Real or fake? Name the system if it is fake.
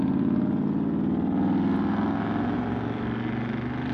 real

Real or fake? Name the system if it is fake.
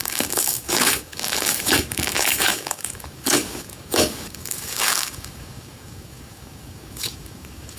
fake, codec, DAC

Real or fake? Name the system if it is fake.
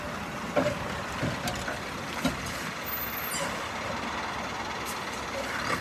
real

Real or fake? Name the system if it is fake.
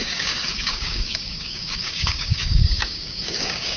fake, codec, DAC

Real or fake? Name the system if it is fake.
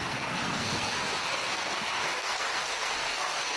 fake, codec, SNAC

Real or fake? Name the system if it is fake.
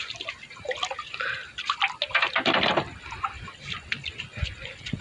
real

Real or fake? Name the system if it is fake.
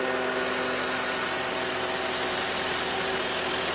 real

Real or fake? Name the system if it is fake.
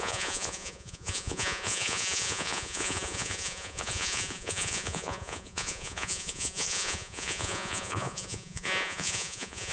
fake, vocoder, Vocos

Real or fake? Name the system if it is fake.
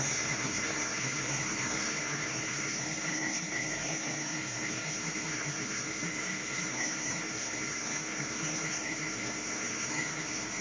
fake, codec, SNAC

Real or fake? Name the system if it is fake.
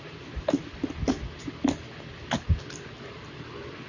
real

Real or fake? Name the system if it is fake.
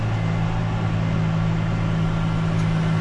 real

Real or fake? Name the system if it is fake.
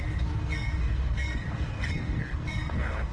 fake, codec, SNAC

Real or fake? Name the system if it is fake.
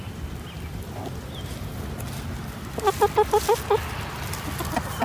real